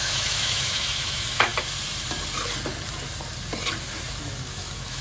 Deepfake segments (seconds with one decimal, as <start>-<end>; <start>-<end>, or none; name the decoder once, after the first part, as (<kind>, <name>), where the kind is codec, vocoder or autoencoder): 0.0-1.5 (autoencoder, DAC-VAE); 4.5-5.0